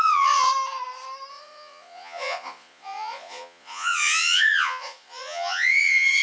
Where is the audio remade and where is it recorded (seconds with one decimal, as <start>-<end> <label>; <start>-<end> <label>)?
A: 0.0-0.5 remade; 0.5-1.3 recorded; 1.3-6.2 remade